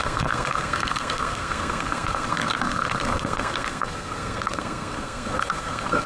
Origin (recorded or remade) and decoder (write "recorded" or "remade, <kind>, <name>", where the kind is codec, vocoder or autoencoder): remade, codec, SNAC